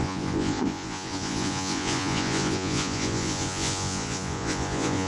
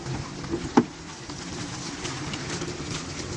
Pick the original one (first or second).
second